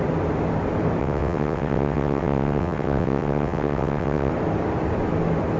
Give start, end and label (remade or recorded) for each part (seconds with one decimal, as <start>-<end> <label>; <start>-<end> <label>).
0.0-1.0 recorded; 1.0-4.3 remade; 4.3-5.6 recorded

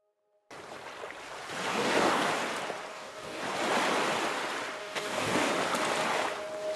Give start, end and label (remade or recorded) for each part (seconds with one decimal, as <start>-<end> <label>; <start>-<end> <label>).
0.0-1.7 recorded; 1.7-2.3 remade; 2.3-2.9 recorded; 2.9-3.4 remade; 3.4-4.8 recorded; 4.8-5.5 remade; 5.5-6.8 recorded

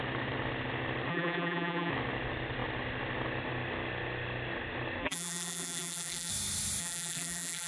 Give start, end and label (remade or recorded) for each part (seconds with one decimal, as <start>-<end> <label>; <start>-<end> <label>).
0.0-1.1 recorded; 1.1-1.9 remade; 1.9-5.0 recorded; 5.0-6.3 remade; 6.3-6.8 recorded; 6.8-7.7 remade

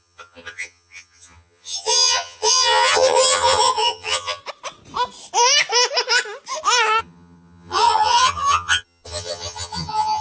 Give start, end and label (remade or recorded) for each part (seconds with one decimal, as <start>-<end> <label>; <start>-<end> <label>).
0.0-4.4 remade; 4.4-7.0 recorded; 7.0-10.2 remade

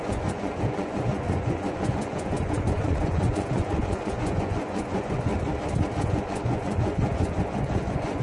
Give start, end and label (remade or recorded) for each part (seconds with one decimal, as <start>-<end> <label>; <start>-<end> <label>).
0.0-5.3 remade; 5.3-6.0 recorded; 6.0-8.2 remade